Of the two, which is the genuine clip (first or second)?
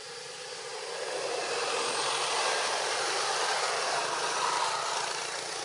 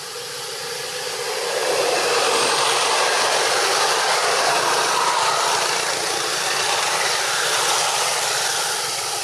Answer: first